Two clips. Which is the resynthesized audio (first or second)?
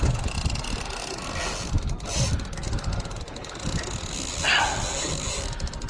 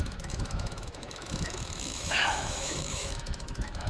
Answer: second